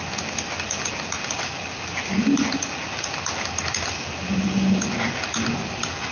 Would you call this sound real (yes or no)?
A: yes